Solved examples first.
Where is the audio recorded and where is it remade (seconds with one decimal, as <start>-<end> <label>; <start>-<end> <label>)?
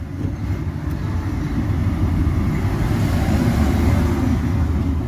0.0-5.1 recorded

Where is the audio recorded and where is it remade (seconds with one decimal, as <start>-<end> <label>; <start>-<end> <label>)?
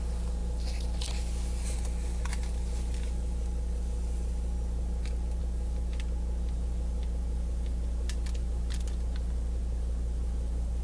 0.0-10.8 recorded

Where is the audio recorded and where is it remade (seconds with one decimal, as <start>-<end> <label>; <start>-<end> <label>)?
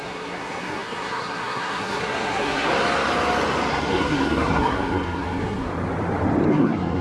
0.0-2.7 remade; 2.7-3.7 recorded; 3.7-5.7 remade; 5.7-6.5 recorded; 6.5-7.0 remade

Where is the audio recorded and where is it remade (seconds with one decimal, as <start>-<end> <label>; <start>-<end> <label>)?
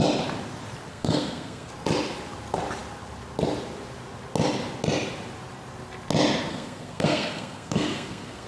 0.0-0.9 recorded; 0.9-1.7 remade; 1.7-6.5 recorded; 6.5-8.5 remade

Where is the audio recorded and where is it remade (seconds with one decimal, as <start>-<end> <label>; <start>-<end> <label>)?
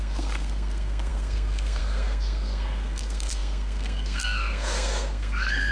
0.0-5.7 remade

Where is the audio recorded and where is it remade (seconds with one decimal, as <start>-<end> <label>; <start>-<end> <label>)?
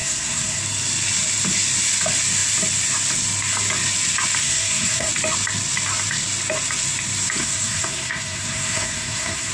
0.0-0.6 remade; 0.6-4.4 recorded; 4.4-5.1 remade; 5.1-7.4 recorded; 7.4-9.5 remade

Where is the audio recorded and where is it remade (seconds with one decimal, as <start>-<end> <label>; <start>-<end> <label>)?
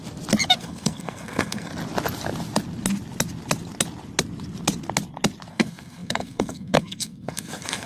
0.0-0.6 recorded; 0.6-1.7 remade; 1.7-5.5 recorded; 5.5-7.9 remade